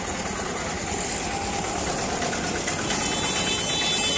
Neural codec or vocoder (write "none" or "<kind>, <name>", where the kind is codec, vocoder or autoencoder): none